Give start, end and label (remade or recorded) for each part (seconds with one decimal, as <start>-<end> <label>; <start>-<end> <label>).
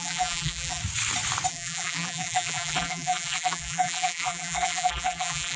0.0-0.8 remade; 0.8-1.5 recorded; 1.5-5.6 remade